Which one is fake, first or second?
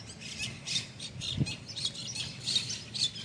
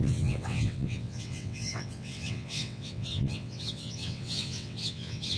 second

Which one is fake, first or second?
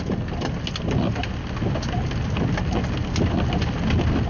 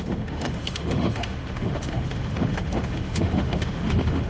second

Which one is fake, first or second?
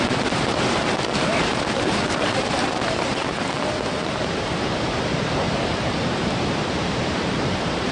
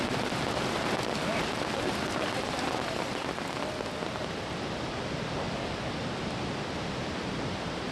first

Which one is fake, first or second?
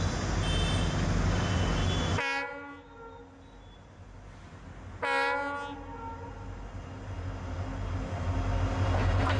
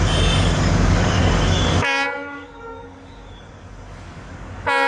second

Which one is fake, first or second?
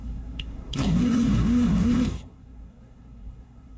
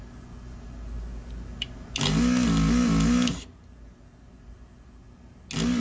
first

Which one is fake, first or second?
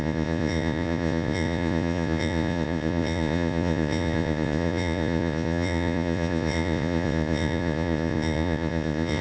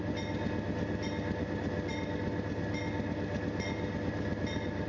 first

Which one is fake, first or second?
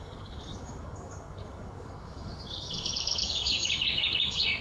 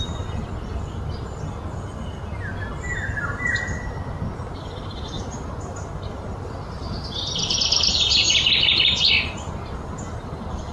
first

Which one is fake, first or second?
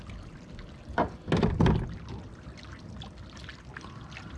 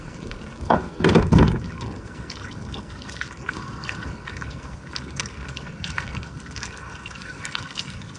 second